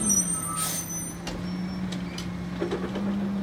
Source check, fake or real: real